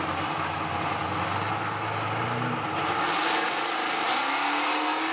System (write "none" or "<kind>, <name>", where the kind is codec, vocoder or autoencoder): none